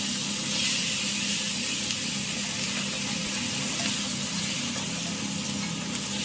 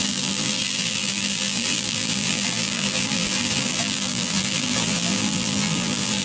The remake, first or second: second